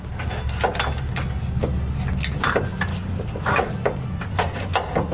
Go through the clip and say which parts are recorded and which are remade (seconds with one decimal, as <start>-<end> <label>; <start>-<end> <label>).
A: 0.0-2.9 recorded; 2.9-3.4 remade; 3.4-5.1 recorded

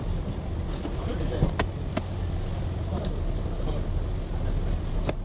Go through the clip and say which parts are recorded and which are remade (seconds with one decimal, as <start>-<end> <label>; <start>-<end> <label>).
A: 0.0-5.2 recorded

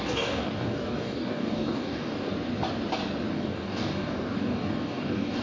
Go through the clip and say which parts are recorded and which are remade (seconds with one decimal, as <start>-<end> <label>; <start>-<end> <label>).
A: 0.0-2.3 remade; 2.3-3.3 recorded; 3.3-5.4 remade

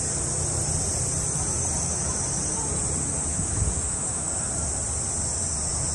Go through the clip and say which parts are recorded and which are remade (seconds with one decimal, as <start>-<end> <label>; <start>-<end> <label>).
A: 0.0-3.3 recorded; 3.3-4.5 remade; 4.5-5.9 recorded

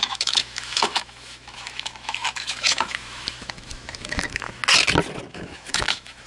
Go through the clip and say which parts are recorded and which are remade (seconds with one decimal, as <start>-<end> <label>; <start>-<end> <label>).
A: 0.0-4.6 remade; 4.6-5.3 recorded; 5.3-6.3 remade